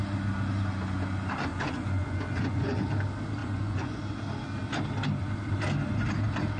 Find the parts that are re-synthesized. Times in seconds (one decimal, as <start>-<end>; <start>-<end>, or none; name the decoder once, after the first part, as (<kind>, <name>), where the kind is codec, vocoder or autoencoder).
1.5-2.9 (vocoder, Vocos); 3.4-4.0